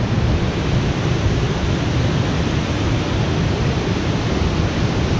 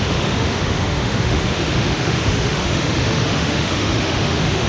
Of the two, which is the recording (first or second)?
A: first